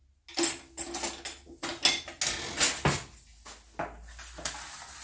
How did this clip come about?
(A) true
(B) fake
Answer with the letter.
A